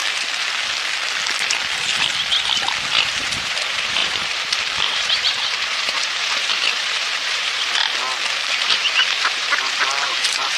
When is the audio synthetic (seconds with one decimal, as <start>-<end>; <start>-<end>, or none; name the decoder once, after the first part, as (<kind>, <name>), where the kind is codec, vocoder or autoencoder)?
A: 2.9-7.8 (vocoder, BigVGAN v2); 8.5-10.6